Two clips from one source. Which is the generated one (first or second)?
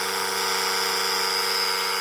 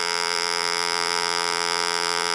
second